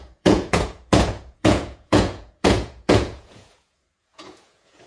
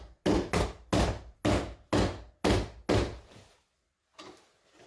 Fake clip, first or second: first